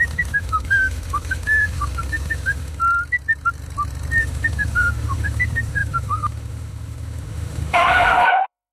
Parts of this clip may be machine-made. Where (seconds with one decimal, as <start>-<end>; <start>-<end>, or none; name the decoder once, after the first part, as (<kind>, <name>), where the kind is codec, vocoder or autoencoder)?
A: 0.0-2.8 (autoencoder, DAC-VAE); 4.2-8.7